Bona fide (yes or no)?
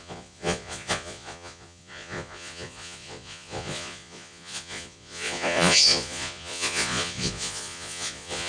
no